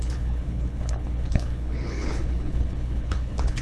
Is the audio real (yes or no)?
no